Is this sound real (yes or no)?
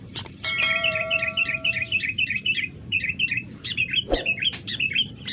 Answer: no